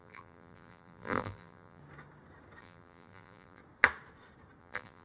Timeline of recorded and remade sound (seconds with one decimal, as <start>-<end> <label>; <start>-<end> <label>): 0.0-1.8 remade; 1.8-2.6 recorded; 2.6-3.6 remade; 3.6-4.6 recorded; 4.6-5.0 remade